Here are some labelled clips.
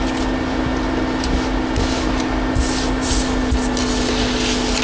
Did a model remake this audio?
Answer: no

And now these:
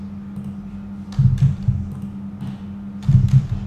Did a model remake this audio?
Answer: no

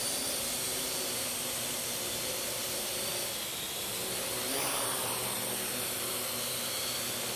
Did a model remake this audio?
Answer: no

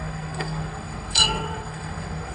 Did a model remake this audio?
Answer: yes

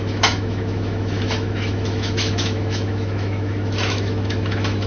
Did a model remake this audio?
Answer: yes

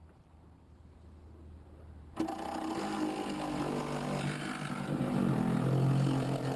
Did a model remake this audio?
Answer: no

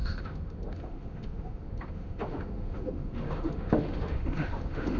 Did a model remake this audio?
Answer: yes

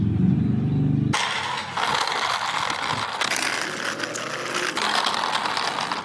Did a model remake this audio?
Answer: no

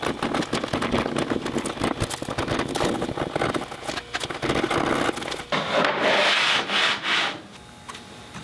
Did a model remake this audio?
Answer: no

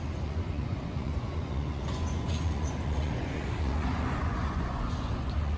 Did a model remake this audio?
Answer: yes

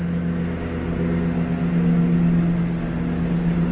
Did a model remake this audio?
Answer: no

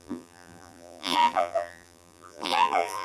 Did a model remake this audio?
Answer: yes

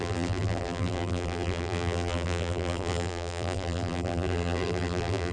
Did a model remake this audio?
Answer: yes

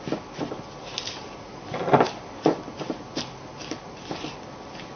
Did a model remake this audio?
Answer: no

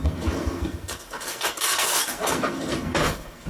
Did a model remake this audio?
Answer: yes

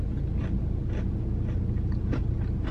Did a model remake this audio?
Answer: no